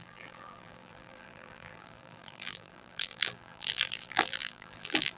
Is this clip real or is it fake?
fake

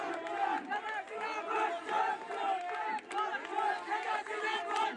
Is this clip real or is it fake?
real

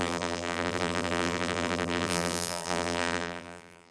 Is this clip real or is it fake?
fake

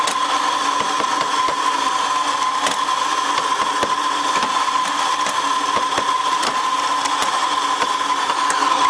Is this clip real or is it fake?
real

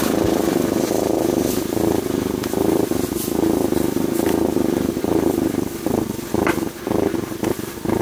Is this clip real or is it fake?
real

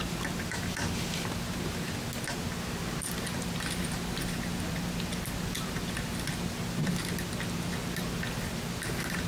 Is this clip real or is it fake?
real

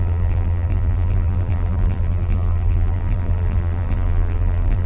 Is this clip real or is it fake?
fake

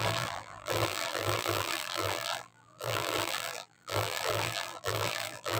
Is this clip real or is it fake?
fake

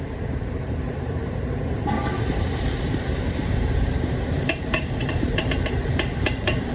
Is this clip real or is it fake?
fake